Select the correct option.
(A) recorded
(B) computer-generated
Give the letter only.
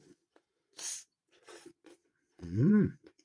B